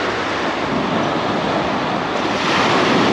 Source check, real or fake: real